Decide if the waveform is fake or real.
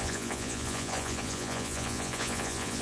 fake